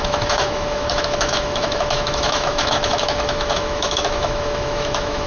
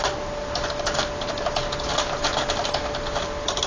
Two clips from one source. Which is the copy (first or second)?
first